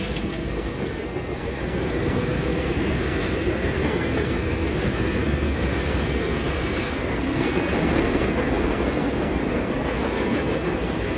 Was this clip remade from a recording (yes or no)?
yes